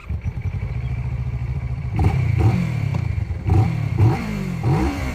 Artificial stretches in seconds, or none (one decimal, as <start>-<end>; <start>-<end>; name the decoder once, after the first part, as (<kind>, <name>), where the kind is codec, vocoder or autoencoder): 0.0-2.9 (vocoder, BigVGAN v2); 3.9-5.1